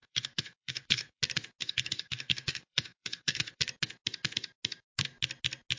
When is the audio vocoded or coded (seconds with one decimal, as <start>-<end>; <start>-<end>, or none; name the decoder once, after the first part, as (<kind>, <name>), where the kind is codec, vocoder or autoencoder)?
0.0-1.2 (codec, SNAC); 1.6-3.6